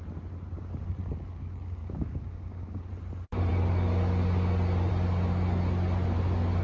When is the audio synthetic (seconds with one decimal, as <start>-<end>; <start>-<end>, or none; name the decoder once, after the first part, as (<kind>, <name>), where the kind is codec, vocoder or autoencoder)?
1.8-2.9 (codec, DAC)